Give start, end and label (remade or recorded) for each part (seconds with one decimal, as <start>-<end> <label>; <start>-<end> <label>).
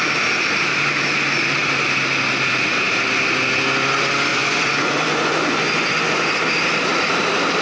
0.0-4.3 recorded; 4.3-6.4 remade; 6.4-7.6 recorded